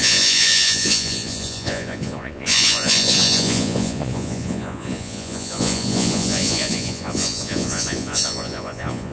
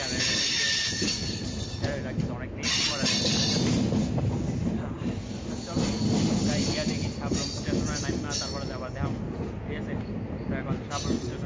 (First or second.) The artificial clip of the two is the first